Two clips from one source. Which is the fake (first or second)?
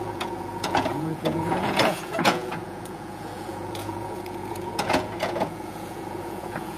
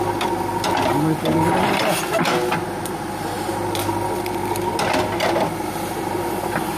first